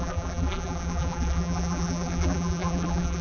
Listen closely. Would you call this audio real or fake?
fake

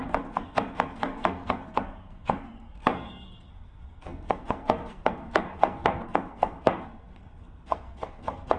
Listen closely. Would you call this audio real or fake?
fake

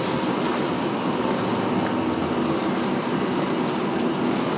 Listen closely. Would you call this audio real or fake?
real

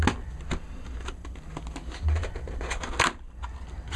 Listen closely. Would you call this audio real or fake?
real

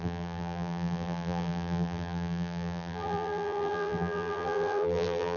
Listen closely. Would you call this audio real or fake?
fake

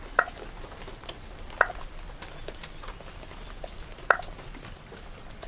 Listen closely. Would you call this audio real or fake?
real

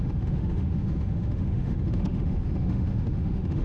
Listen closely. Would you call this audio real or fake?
fake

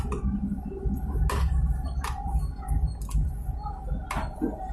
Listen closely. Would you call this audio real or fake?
real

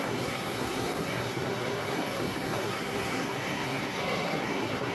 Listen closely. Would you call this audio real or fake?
fake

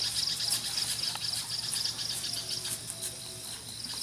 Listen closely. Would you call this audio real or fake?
real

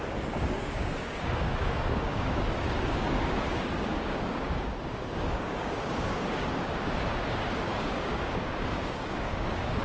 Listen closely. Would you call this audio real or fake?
fake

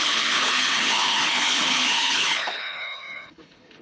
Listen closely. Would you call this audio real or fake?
fake